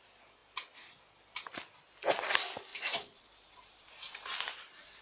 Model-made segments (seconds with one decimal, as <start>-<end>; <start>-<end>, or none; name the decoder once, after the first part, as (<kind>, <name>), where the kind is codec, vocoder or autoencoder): 2.7-5.0 (vocoder, BigVGAN v2)